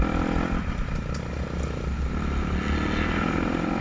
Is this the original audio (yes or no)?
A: yes